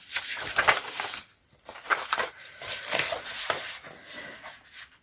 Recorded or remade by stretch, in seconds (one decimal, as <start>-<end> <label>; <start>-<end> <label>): 0.0-5.0 recorded